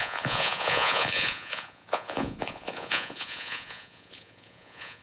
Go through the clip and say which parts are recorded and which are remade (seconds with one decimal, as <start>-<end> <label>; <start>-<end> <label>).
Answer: 0.0-5.0 remade